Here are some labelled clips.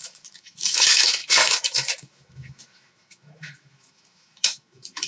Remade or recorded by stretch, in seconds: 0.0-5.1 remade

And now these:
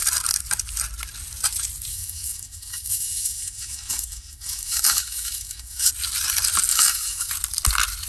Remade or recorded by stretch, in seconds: 0.0-1.9 recorded; 1.9-5.9 remade; 5.9-6.7 recorded; 6.7-7.3 remade; 7.3-8.1 recorded

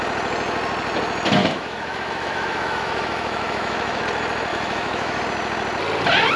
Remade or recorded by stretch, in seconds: 0.0-1.4 recorded; 1.4-4.0 remade; 4.0-4.5 recorded; 4.5-5.2 remade; 5.2-6.4 recorded